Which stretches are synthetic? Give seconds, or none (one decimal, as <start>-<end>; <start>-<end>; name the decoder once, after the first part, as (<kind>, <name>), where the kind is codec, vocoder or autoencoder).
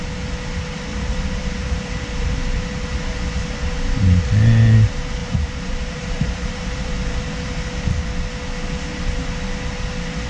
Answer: 0.9-2.3 (vocoder, BigVGAN v2); 5.2-6.9